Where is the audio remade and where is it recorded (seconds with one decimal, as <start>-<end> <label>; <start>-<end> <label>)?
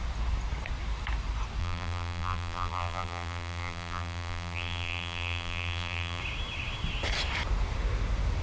0.0-1.6 recorded; 1.6-6.2 remade; 6.2-8.4 recorded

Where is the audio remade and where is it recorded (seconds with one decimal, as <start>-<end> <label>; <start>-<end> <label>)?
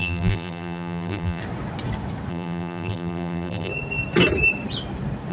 0.0-1.4 remade; 1.4-2.3 recorded; 2.3-3.7 remade; 3.7-5.3 recorded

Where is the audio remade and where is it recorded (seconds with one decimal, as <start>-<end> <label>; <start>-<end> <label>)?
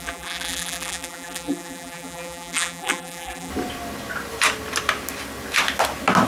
0.0-3.5 remade; 3.5-6.3 recorded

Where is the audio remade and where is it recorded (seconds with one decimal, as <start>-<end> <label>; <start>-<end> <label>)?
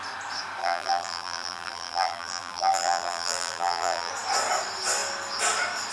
0.0-0.6 recorded; 0.6-4.1 remade; 4.1-5.9 recorded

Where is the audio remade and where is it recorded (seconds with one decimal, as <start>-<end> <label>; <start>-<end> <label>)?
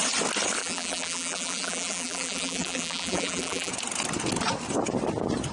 0.0-0.6 recorded; 0.6-3.7 remade; 3.7-5.5 recorded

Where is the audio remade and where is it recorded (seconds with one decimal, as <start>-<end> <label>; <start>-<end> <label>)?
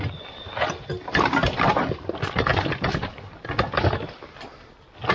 0.0-5.1 recorded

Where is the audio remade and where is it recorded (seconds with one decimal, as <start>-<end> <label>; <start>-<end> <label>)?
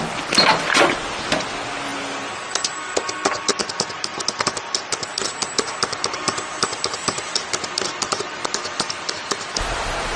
0.0-10.2 recorded